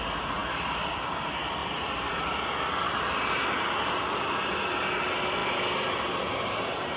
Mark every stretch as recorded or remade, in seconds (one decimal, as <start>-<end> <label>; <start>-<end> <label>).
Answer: 0.0-0.4 recorded; 0.4-0.9 remade; 0.9-1.6 recorded; 1.6-3.9 remade; 3.9-7.0 recorded